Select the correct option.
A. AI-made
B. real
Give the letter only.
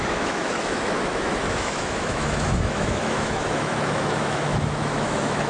A